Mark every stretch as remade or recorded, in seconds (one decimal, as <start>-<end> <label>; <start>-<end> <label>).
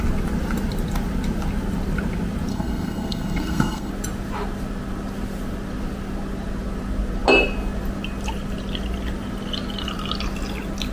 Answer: 0.0-2.5 recorded; 2.5-3.9 remade; 3.9-10.9 recorded